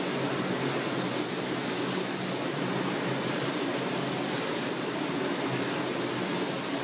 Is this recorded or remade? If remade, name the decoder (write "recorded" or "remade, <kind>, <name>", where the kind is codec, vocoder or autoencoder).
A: recorded